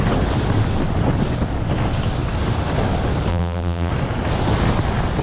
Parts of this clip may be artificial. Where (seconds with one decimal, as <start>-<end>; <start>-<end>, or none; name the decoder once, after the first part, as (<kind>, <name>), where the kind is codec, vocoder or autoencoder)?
3.3-3.9 (vocoder, BigVGAN v2)